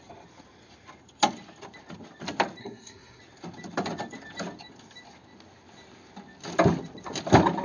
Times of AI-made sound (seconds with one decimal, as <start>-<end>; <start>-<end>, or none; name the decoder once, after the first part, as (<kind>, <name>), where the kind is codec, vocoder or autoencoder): 2.6-3.2 (codec, SNAC)